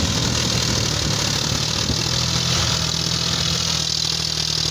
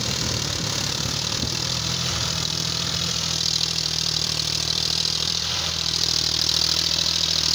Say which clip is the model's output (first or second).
second